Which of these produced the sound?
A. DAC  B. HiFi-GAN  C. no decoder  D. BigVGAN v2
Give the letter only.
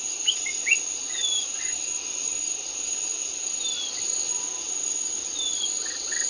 C